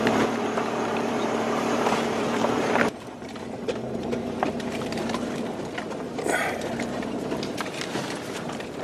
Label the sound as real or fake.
fake